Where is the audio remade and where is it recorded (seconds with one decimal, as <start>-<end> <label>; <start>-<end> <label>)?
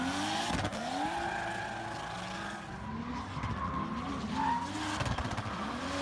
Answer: 0.0-6.0 recorded